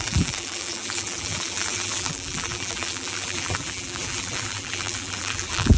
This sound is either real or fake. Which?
fake